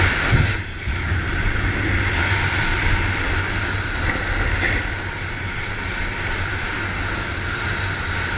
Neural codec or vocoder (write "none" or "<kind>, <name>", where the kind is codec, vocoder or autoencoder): none